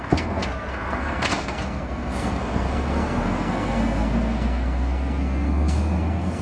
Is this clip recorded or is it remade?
remade